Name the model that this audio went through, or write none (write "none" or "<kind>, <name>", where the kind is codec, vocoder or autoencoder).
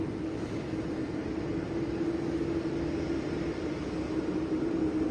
none